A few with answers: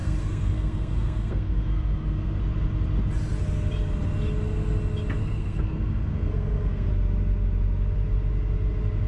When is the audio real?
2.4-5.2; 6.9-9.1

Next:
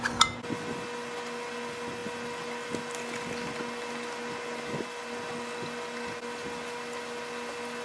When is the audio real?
0.0-7.8

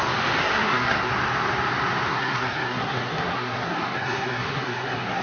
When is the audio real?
0.0-0.4; 1.1-2.1

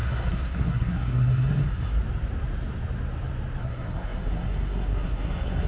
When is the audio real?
2.0-3.6

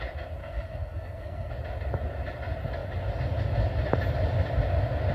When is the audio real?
0.0-0.4; 1.5-5.1